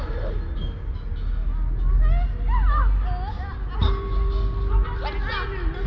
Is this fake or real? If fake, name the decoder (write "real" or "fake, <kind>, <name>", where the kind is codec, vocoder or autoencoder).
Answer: real